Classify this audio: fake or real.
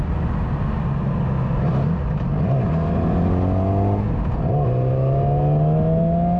real